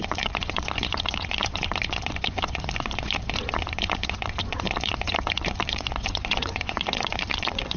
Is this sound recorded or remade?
remade